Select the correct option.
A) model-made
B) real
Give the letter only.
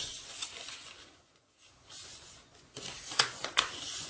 A